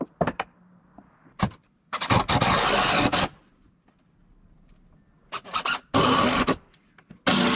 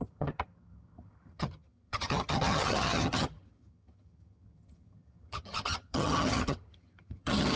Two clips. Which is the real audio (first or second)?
first